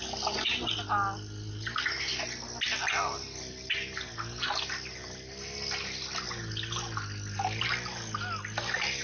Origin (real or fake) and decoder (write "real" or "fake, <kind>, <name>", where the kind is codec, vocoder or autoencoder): real